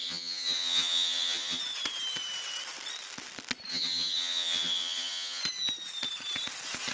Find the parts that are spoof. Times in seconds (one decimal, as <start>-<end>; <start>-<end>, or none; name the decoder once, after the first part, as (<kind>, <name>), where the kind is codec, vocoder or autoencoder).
0.0-1.6 (vocoder, HiFi-GAN); 3.7-5.4